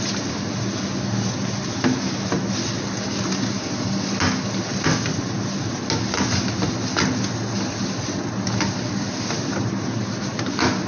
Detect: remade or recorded recorded